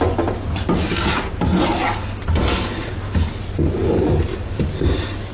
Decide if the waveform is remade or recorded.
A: recorded